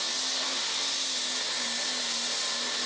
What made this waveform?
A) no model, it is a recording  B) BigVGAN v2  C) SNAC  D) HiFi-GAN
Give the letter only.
A